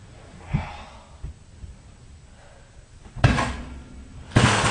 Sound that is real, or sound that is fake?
real